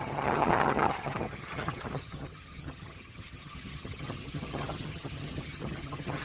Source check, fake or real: fake